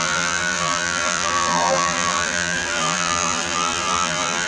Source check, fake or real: fake